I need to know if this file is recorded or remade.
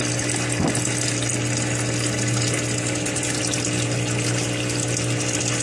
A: recorded